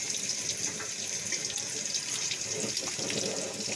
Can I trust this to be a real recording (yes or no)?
no